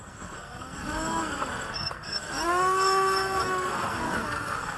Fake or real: fake